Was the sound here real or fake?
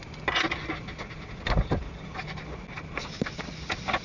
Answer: real